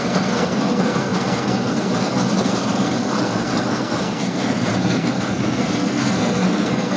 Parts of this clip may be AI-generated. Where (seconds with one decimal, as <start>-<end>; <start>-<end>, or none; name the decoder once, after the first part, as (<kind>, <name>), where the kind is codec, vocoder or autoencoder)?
0.0-7.0 (codec, SNAC)